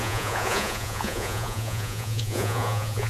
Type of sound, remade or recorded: remade